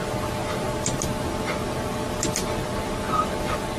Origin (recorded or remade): recorded